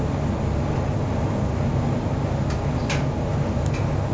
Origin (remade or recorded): recorded